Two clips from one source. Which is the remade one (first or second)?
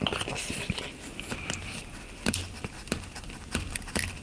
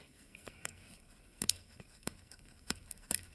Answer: second